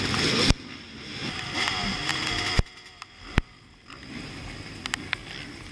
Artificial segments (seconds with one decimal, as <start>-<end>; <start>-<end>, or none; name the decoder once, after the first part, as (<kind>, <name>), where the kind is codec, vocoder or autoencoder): none